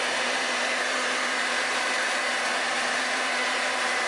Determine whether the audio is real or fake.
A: fake